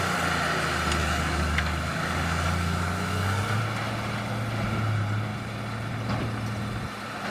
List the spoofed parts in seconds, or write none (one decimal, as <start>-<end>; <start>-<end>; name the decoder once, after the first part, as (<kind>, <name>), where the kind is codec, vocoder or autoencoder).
1.0-3.6 (codec, DAC)